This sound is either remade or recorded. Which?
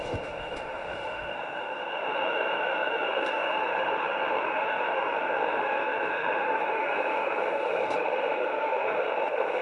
remade